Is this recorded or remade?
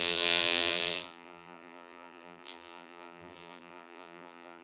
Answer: remade